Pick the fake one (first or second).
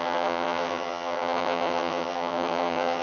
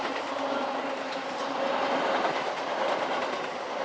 first